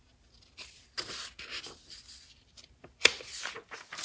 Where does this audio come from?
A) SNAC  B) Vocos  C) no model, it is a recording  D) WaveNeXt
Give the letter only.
C